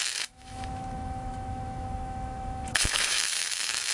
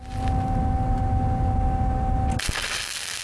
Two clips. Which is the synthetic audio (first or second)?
first